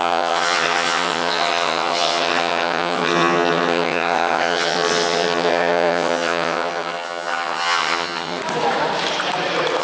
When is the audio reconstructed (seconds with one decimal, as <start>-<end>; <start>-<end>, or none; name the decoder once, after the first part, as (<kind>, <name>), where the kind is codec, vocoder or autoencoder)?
0.0-8.4 (vocoder, HiFi-GAN)